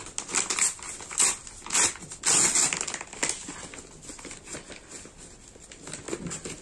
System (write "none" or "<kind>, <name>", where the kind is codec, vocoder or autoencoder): none